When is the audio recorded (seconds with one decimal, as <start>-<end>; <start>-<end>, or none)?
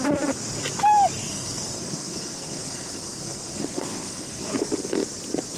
0.0-1.2; 4.5-5.6